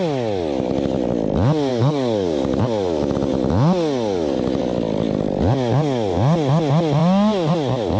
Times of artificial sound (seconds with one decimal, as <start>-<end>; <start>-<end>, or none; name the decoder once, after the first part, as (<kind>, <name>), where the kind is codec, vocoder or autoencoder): 1.7-2.6 (codec, DAC)